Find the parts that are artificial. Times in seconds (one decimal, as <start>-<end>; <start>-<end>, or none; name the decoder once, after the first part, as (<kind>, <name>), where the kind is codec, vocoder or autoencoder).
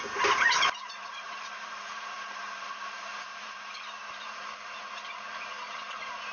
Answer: 1.0-4.8 (vocoder, BigVGAN v2)